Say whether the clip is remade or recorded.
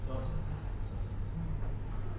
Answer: recorded